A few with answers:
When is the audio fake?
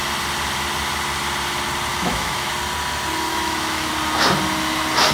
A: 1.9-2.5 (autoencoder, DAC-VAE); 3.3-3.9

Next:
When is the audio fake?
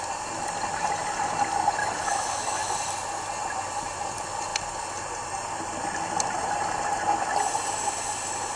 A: 1.8-2.7 (autoencoder, DAC-VAE)